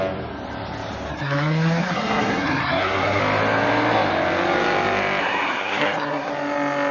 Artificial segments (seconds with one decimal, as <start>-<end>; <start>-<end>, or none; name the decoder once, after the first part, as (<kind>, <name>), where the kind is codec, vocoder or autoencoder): 1.1-3.2 (codec, SNAC); 5.2-6.3